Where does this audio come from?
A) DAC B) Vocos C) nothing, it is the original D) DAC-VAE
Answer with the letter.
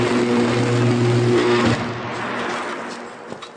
C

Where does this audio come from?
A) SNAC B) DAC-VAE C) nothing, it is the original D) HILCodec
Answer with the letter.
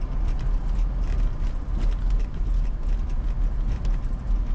C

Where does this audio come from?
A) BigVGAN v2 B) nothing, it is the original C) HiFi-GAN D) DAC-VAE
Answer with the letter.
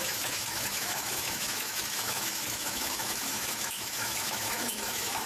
D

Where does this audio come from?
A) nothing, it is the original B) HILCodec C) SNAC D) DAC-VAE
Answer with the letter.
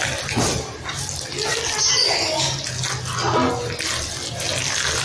A